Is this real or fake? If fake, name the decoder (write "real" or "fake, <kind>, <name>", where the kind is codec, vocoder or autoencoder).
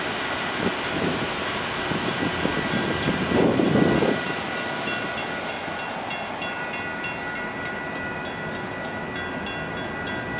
real